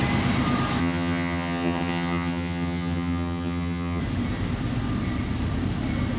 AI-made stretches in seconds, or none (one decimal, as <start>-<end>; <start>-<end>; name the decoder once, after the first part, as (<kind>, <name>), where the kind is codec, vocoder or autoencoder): 0.8-4.0 (vocoder, HiFi-GAN)